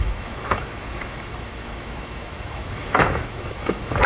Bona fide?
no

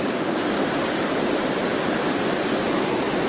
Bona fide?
no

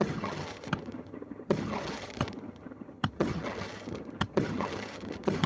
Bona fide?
no